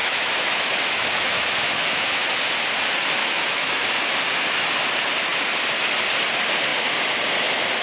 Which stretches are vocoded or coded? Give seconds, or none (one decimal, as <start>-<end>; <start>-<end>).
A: 0.0-2.3; 3.2-3.7